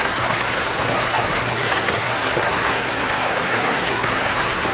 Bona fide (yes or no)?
no